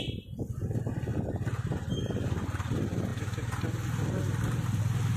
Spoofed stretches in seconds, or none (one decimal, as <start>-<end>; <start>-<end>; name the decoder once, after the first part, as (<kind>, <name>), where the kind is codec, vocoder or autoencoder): none